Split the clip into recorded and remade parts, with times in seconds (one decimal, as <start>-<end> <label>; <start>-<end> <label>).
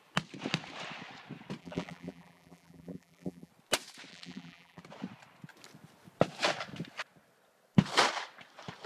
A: 0.0-1.6 recorded; 1.6-3.5 remade; 3.5-4.1 recorded; 4.1-4.8 remade; 4.8-8.9 recorded